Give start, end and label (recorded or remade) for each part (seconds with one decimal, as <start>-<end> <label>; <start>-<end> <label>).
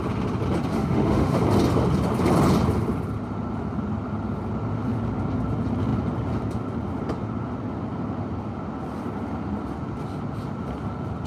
0.0-0.7 recorded; 0.7-1.4 remade; 1.4-11.3 recorded